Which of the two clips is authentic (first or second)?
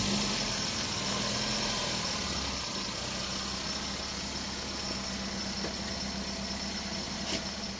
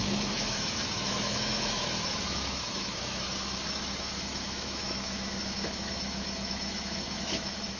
first